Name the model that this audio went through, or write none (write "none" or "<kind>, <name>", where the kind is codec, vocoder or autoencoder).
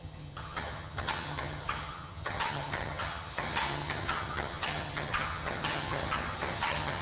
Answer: vocoder, HiFi-GAN